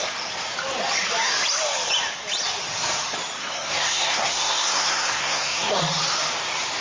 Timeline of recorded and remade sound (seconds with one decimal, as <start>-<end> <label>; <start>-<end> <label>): 0.0-3.4 recorded; 3.4-5.8 remade; 5.8-6.8 recorded